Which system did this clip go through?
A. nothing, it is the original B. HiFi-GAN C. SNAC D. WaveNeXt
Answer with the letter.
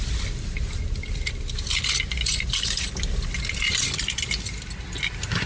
A